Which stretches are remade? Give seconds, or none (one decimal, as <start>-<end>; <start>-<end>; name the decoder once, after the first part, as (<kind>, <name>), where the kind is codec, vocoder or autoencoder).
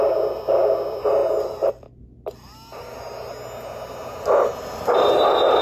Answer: 0.0-1.2 (vocoder, BigVGAN v2); 4.6-5.6